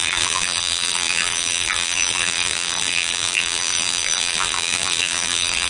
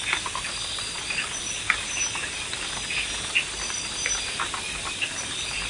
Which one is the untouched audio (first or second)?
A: second